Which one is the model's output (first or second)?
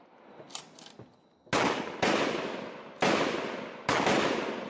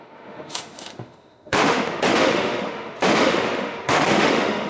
second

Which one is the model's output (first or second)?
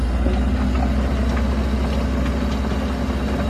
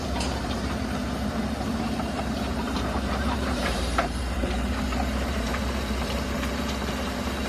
second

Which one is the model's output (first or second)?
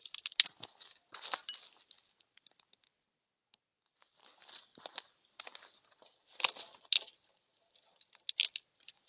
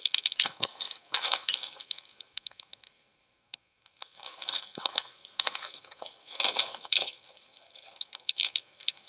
second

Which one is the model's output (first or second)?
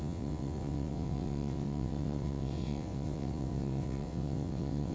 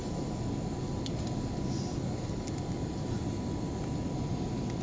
first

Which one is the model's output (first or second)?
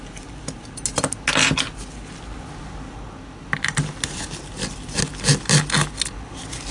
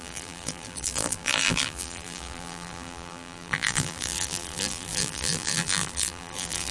second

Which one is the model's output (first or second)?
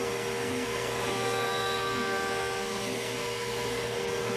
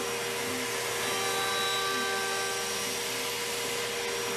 first